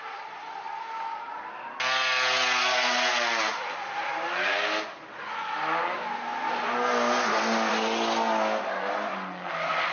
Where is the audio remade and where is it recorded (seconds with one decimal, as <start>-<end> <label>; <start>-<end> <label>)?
0.0-9.9 recorded